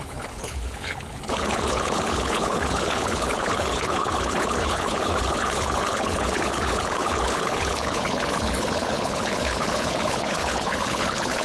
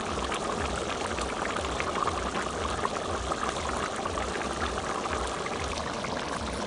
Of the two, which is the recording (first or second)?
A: second